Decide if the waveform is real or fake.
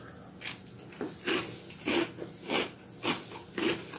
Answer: real